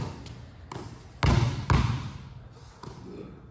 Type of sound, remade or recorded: recorded